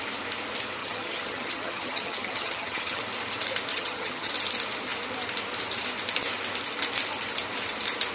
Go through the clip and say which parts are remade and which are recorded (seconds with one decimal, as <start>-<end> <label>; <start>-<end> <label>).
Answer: 0.0-0.8 recorded; 0.8-3.0 remade; 3.0-3.7 recorded; 3.7-4.3 remade; 4.3-8.1 recorded